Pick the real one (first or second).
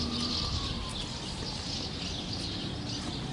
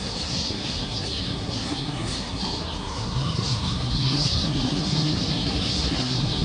first